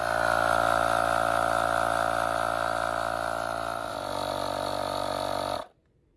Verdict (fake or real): real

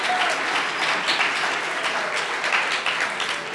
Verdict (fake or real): real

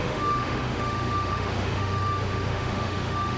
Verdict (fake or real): fake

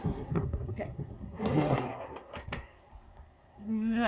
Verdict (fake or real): fake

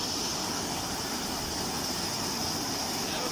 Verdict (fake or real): real